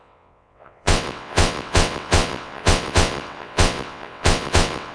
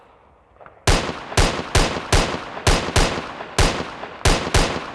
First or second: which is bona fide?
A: second